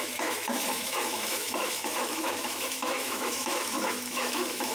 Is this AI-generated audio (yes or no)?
yes